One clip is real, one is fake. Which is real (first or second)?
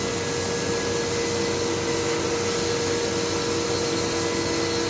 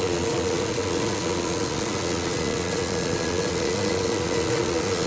first